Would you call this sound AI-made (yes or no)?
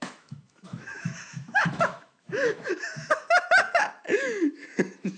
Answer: yes